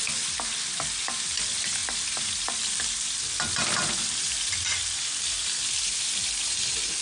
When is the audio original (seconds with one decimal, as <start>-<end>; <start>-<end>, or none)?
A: 0.0-7.0